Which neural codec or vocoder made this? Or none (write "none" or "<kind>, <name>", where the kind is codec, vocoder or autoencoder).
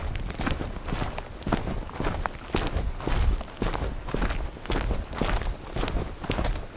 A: none